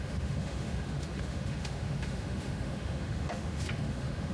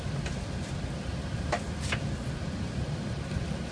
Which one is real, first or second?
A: second